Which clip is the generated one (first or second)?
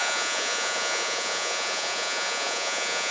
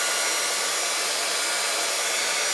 first